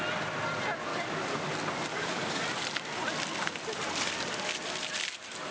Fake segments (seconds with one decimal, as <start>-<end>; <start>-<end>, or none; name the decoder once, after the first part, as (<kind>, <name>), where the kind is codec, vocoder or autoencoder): 0.9-1.5 (codec, DAC); 1.9-2.4